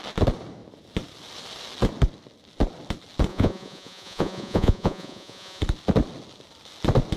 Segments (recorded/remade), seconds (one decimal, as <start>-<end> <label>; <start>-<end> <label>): 0.0-3.3 recorded; 3.3-5.6 remade; 5.6-7.2 recorded